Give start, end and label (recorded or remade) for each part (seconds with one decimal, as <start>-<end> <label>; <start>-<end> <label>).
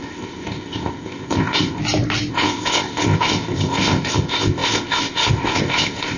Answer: 0.0-1.8 remade; 1.8-2.3 recorded; 2.3-6.2 remade